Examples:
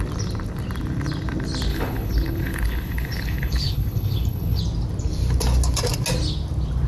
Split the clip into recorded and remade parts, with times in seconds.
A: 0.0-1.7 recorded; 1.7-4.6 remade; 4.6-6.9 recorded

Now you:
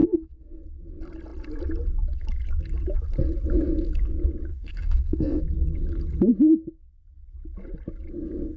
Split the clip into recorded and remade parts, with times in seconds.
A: 0.0-0.6 remade; 0.6-4.5 recorded; 4.5-5.4 remade; 5.4-8.6 recorded

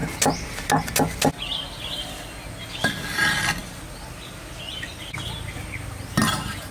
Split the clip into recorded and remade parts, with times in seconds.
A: 0.0-6.7 recorded

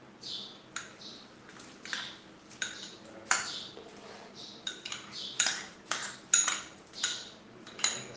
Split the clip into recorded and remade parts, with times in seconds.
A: 0.0-8.2 recorded

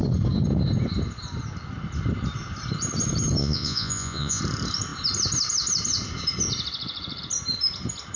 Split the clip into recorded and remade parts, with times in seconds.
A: 0.0-3.4 recorded; 3.4-4.4 remade; 4.4-8.2 recorded